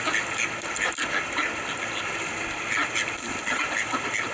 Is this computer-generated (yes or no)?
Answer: no